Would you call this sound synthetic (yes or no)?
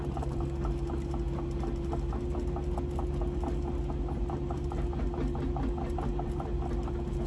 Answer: no